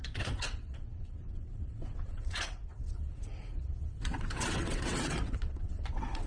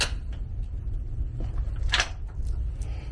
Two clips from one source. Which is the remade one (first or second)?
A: first